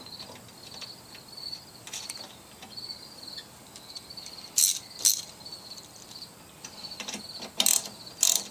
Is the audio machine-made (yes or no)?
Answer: no